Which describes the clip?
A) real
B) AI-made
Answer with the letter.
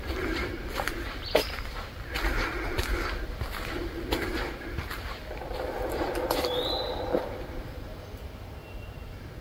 A